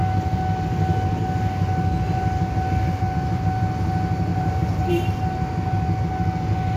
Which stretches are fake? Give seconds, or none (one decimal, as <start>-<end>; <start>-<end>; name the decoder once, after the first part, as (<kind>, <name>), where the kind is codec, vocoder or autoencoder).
4.3-4.9 (vocoder, BigVGAN v2)